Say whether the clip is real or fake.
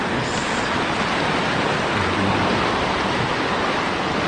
real